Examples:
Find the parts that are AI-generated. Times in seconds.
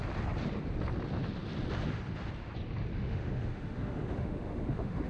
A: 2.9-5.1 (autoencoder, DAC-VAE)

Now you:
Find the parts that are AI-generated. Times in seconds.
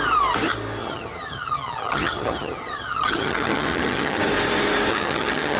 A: 0.8-4.2 (vocoder, HiFi-GAN); 4.9-5.6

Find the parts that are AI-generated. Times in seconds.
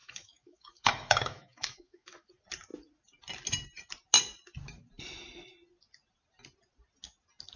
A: 0.0-2.3 (autoencoder, DAC-VAE)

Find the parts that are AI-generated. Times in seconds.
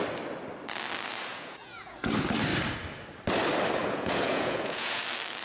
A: 1.3-2.1 (vocoder, Vocos); 3.8-5.0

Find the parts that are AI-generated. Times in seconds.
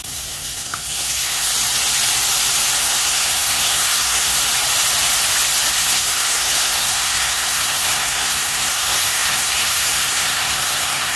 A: 0.0-1.5 (codec, SNAC); 2.8-4.4; 5.7-11.2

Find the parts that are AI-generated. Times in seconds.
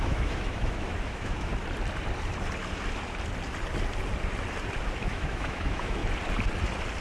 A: 0.0-1.5 (autoencoder, DAC-VAE); 5.0-6.0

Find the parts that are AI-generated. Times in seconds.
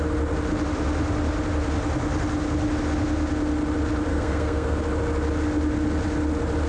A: 4.1-4.8 (codec, SNAC)